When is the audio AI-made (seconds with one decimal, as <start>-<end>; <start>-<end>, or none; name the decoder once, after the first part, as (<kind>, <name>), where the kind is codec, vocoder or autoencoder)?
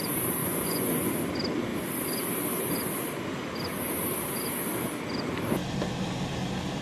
0.4-1.1 (vocoder, Vocos)